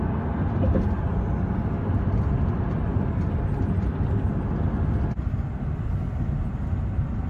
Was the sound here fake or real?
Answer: real